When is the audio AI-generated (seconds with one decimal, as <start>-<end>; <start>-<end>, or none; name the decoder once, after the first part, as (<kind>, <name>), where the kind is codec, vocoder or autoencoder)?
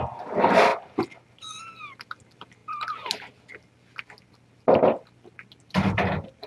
0.0-0.7 (vocoder, BigVGAN v2); 1.3-2.6; 5.6-6.5